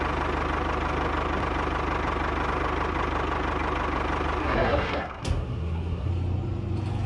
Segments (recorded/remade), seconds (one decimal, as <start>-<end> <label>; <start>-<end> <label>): 0.0-4.4 recorded; 4.4-6.1 remade; 6.1-7.1 recorded